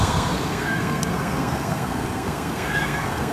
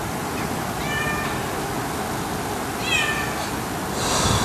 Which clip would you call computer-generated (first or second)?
first